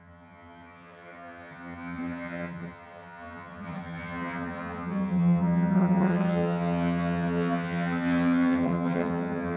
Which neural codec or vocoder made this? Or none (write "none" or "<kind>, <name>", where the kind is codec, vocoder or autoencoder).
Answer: vocoder, HiFi-GAN